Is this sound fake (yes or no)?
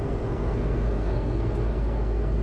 yes